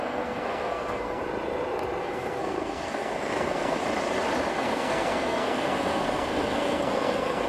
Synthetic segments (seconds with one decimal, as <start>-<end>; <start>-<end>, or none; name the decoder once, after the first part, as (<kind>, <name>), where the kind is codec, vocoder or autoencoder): 0.0-1.2 (codec, SNAC); 2.0-3.8; 4.5-7.5